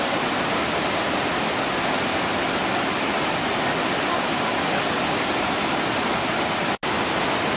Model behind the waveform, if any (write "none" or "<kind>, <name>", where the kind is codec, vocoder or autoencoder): none